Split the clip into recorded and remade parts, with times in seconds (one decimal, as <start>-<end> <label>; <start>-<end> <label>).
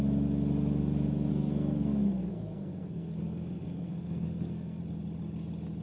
0.0-1.3 recorded; 1.3-4.8 remade; 4.8-5.8 recorded